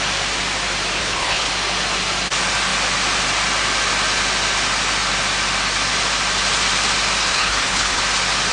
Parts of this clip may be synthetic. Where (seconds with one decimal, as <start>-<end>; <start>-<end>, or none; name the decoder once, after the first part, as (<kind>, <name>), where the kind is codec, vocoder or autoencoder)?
1.0-1.5 (codec, HILCodec); 7.2-8.0

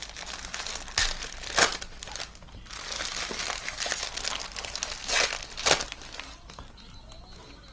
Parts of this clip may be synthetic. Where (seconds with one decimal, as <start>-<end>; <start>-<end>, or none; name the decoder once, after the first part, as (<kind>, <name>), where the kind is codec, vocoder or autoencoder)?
none

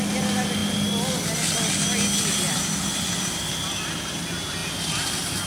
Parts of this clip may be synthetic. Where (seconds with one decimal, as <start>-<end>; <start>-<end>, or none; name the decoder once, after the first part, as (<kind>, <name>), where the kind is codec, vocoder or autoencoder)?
none

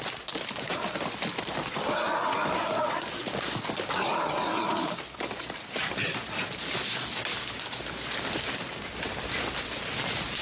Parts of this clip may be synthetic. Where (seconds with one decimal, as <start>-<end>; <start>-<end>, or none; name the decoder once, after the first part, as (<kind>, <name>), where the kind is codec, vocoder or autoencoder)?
none

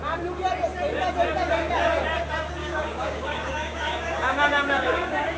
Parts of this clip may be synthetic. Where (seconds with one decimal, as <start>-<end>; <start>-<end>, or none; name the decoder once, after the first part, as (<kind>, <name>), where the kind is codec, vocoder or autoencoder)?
2.6-5.4 (codec, DAC)